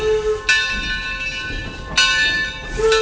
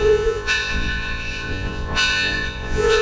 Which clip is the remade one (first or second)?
second